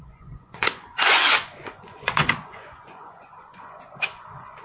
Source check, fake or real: fake